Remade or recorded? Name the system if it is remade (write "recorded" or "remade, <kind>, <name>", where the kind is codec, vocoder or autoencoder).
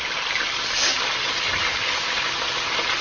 recorded